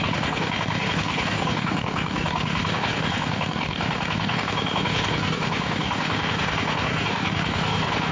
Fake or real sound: fake